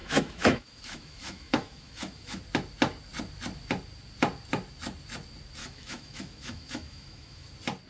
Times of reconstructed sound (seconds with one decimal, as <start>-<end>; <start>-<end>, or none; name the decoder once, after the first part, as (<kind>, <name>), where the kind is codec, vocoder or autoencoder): 0.0-2.4 (autoencoder, DAC-VAE); 5.6-7.5